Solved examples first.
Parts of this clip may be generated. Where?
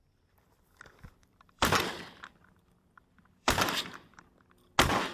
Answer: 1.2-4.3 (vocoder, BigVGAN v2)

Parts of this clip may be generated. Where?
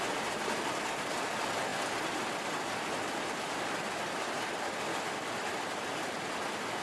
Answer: none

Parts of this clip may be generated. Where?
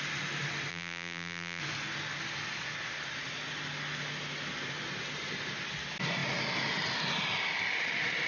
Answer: 0.7-1.6 (vocoder, BigVGAN v2)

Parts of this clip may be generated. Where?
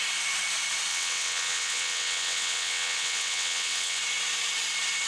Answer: 0.9-4.0 (vocoder, WaveNeXt)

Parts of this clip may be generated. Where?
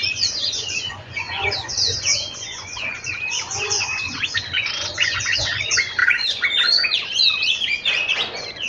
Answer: 0.0-8.7 (vocoder, Vocos)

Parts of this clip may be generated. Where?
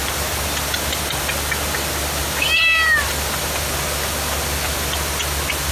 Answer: none